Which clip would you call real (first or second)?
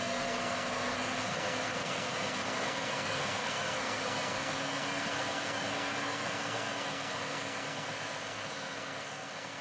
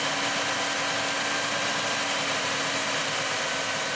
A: second